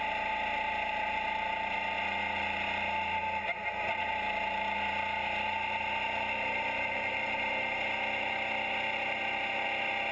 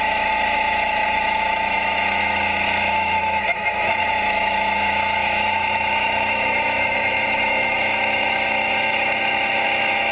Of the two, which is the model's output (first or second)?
second